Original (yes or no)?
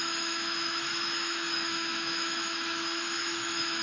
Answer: no